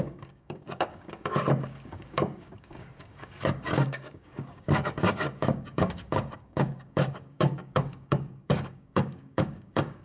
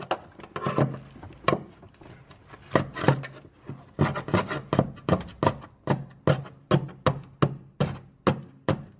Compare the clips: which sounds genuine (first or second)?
second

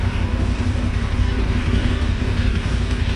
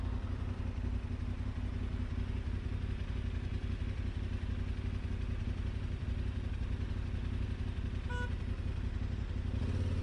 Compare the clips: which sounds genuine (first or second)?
second